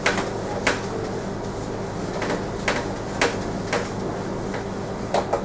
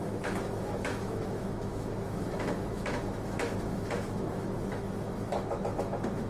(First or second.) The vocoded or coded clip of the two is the second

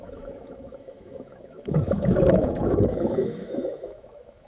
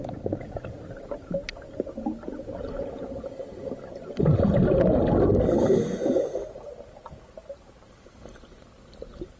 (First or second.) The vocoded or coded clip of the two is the first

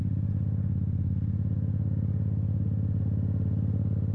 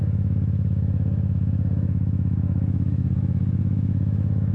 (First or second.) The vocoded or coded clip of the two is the second